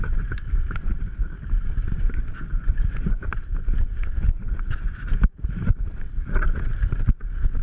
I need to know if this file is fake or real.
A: real